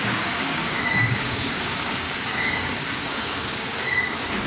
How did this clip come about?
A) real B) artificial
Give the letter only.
B